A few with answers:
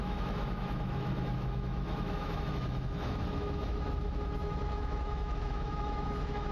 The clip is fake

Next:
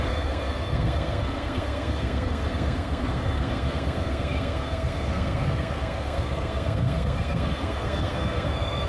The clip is fake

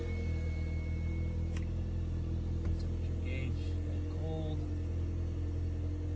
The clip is real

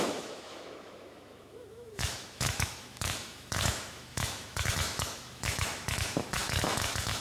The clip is fake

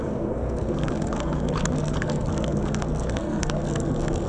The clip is fake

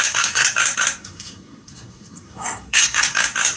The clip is fake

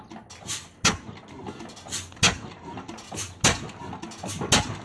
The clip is real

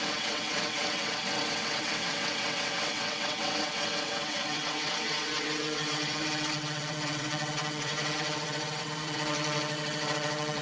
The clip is fake